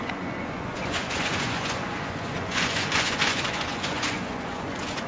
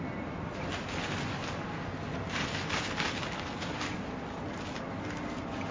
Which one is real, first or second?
second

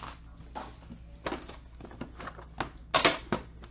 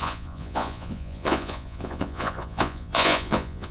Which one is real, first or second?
first